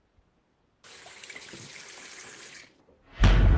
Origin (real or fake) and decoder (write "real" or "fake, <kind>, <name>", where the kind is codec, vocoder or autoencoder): real